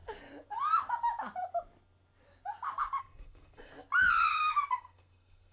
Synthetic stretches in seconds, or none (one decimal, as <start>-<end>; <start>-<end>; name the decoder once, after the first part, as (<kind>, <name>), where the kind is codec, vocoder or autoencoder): 3.0-3.7 (codec, SNAC); 4.7-5.5